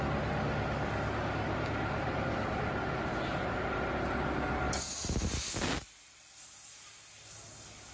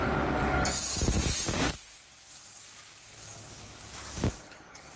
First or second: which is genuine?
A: first